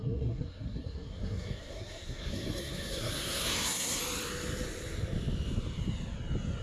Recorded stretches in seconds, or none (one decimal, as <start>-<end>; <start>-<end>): 4.0-6.6